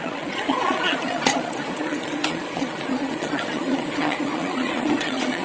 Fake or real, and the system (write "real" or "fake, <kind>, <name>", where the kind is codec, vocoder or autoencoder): fake, vocoder, Vocos